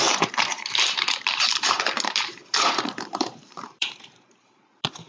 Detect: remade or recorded remade